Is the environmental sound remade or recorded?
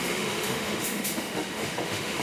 remade